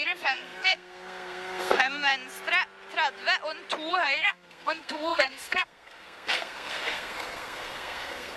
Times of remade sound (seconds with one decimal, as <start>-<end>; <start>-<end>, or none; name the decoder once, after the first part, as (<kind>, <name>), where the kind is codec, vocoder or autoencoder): 0.0-2.1 (codec, SNAC); 3.9-8.4